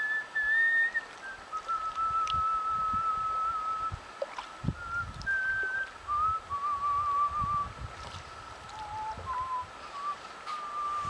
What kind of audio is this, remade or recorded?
recorded